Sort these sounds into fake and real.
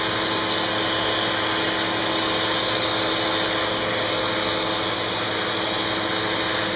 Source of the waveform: real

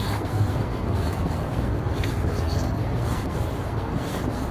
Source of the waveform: fake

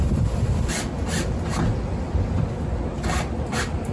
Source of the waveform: real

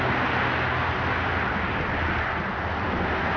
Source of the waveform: real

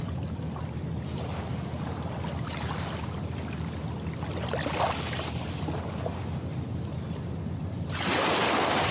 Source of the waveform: real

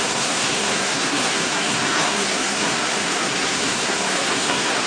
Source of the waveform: fake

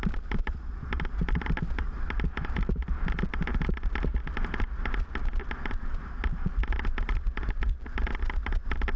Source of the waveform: real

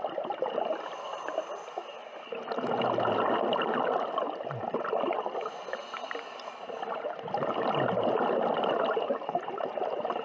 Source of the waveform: real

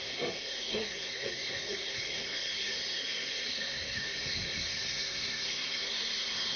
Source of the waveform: fake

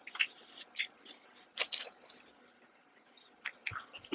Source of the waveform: real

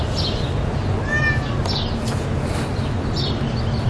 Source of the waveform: real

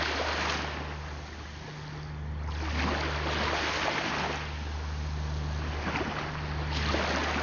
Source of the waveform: real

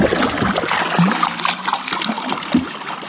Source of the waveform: real